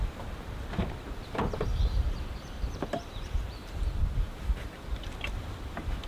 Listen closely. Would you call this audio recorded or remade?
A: remade